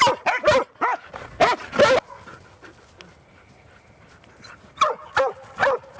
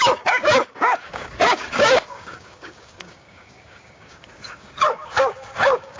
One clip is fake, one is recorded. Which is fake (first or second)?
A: second